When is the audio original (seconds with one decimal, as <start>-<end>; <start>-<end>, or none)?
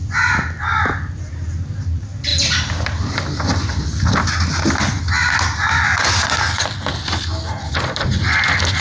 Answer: 0.0-8.8